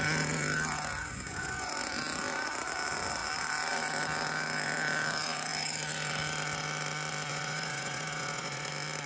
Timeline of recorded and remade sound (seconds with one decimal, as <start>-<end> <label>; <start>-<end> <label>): 0.0-1.0 recorded; 1.0-1.7 remade; 1.7-7.3 recorded; 7.3-8.7 remade; 8.7-9.1 recorded